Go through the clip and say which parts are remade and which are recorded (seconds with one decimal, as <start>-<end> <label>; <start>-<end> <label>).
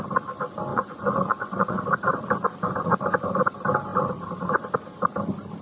0.0-0.7 recorded; 0.7-1.8 remade; 1.8-5.6 recorded